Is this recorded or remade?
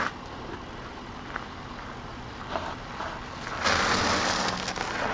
recorded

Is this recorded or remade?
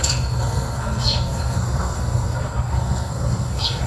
remade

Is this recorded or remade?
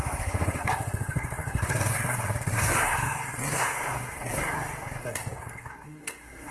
remade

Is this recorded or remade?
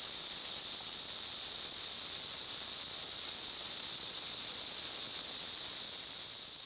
recorded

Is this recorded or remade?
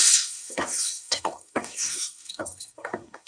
remade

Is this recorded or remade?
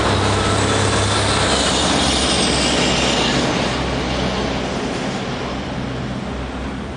recorded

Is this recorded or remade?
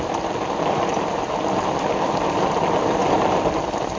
recorded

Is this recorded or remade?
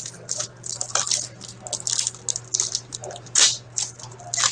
recorded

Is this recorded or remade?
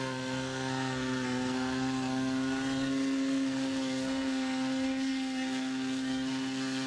remade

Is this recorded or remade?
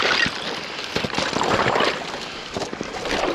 recorded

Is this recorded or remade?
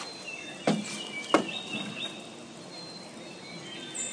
recorded